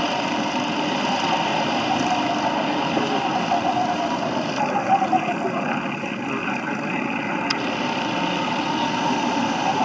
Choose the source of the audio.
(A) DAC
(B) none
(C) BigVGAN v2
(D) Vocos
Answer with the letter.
B